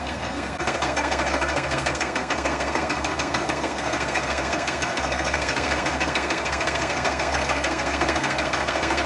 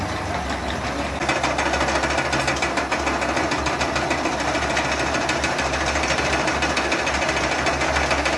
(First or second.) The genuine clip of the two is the second